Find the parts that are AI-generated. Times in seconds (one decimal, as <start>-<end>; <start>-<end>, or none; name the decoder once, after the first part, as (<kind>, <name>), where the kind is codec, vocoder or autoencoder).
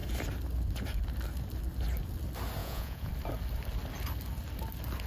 2.6-3.1 (vocoder, Vocos)